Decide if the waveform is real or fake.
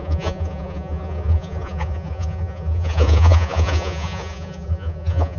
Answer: fake